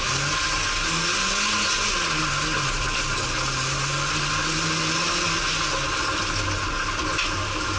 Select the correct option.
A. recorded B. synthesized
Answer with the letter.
A